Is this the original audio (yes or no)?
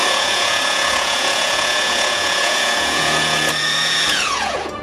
no